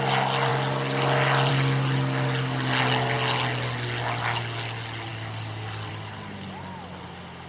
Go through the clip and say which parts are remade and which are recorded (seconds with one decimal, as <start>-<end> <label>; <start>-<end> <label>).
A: 0.0-7.5 recorded